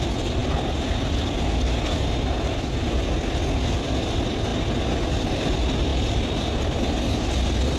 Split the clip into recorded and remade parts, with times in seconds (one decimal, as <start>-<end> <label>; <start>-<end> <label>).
0.0-7.8 recorded